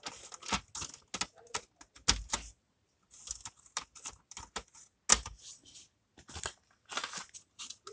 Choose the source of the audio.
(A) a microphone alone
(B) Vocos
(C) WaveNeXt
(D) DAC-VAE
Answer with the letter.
A